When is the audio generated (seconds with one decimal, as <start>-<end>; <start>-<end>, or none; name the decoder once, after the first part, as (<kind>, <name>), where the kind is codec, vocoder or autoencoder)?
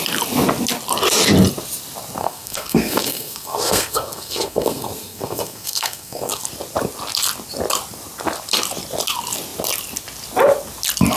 2.2-6.4 (codec, SNAC)